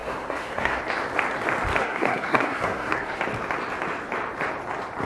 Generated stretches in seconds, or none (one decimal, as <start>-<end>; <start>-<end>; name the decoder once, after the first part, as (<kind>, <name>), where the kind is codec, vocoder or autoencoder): 0.0-0.8 (codec, SNAC); 1.8-3.2